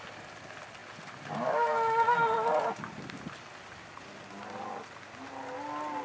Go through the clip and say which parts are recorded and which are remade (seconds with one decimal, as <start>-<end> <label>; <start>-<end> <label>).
0.0-6.0 recorded